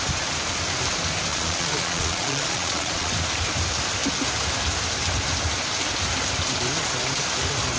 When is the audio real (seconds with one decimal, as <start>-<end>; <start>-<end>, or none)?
0.0-1.3; 3.1-7.8